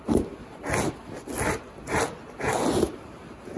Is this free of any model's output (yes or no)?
yes